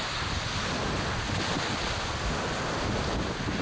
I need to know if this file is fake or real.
real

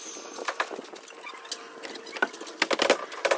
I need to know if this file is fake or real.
real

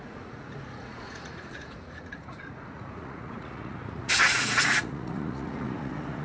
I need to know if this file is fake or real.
fake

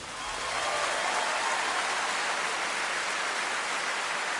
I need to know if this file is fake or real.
real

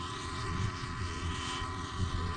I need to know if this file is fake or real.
fake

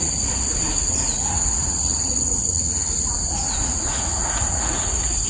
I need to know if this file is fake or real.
fake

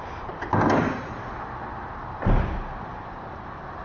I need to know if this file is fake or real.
real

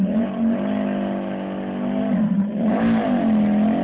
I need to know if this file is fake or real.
real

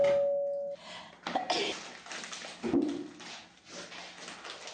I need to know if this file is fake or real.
real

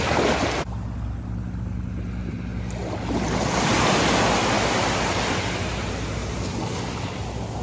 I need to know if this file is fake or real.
real